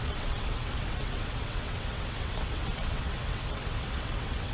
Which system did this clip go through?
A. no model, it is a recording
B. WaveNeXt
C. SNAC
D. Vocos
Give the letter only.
B